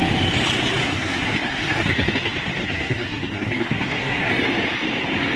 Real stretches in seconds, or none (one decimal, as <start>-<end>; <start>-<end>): 0.0-0.8; 2.1-2.6; 4.3-5.4